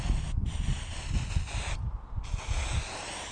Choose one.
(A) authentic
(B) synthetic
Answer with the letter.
A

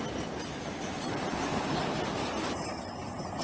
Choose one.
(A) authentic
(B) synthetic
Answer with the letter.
A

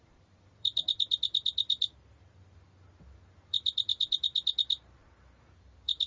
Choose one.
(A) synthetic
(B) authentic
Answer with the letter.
A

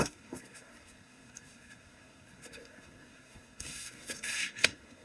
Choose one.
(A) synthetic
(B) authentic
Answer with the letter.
A